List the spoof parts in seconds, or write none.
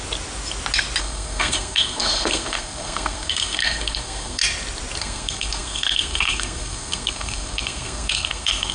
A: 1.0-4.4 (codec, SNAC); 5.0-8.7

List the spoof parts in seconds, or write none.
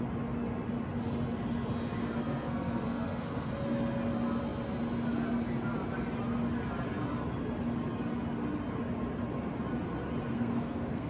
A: 2.2-3.5 (codec, SNAC); 10.3-11.1